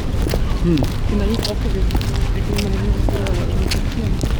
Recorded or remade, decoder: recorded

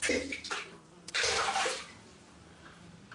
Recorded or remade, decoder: remade, vocoder, BigVGAN v2